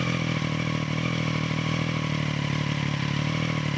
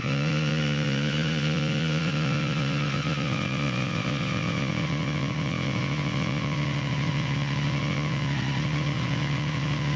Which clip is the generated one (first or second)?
second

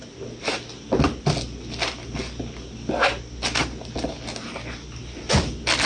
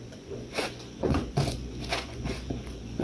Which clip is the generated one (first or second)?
second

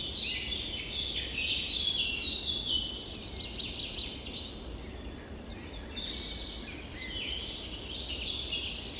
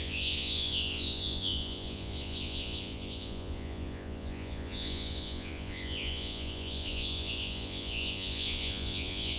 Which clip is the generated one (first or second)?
second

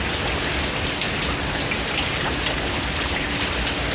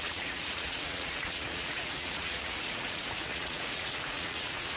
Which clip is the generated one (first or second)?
second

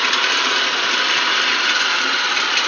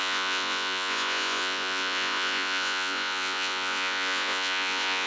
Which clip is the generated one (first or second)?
second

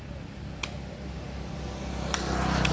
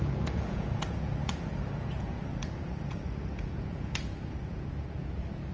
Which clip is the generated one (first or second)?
second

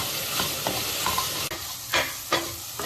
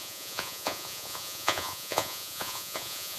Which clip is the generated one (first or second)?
second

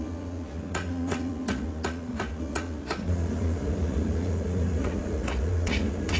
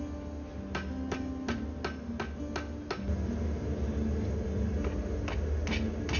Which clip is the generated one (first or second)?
first